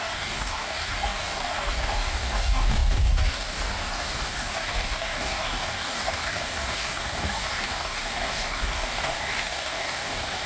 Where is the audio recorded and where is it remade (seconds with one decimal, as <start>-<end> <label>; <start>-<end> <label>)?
0.0-10.5 remade